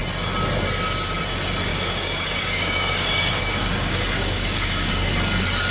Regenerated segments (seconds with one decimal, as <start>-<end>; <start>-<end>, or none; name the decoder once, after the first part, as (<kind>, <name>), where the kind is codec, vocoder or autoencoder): 1.7-5.1 (codec, DAC)